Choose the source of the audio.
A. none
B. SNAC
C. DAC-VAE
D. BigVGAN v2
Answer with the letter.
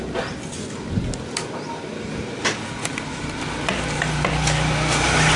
A